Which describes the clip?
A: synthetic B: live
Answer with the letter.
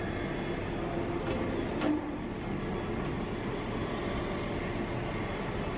B